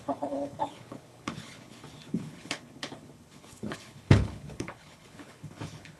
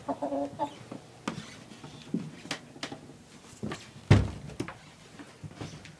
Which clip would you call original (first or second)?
second